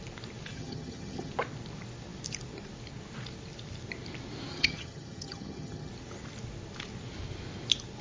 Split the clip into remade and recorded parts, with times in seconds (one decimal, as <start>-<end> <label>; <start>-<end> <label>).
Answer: 0.0-0.5 recorded; 0.5-1.3 remade; 1.3-4.5 recorded; 4.5-5.9 remade; 5.9-8.0 recorded